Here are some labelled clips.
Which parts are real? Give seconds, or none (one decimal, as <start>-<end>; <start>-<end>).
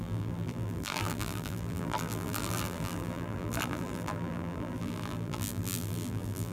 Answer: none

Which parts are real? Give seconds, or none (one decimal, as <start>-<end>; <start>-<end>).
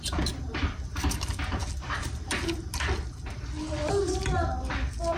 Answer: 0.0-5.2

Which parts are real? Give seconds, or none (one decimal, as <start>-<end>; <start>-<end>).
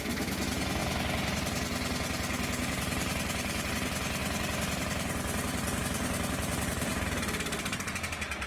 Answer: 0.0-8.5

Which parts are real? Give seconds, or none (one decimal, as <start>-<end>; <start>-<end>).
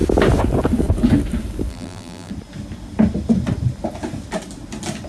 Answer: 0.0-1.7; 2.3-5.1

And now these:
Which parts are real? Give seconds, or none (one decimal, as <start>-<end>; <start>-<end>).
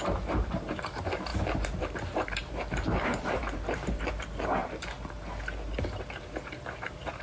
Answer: 4.6-5.8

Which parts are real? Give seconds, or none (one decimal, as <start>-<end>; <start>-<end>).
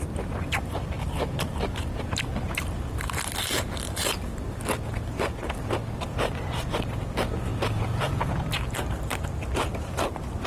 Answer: 4.3-6.4